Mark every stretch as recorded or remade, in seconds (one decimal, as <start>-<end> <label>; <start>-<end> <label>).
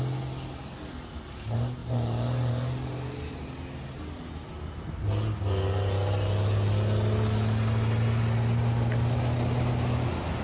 0.0-10.4 recorded